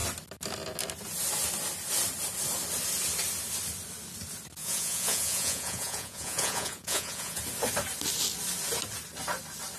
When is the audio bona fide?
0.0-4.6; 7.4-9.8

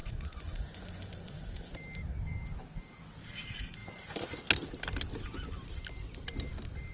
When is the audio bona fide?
1.7-3.8; 4.4-6.9